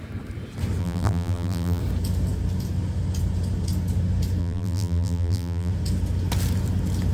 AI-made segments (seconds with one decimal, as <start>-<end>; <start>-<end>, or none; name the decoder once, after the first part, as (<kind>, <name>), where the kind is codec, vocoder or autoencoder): 0.8-1.8 (vocoder, BigVGAN v2); 4.4-5.7